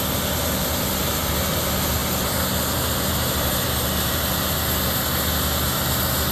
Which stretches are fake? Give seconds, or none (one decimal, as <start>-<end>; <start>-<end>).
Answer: none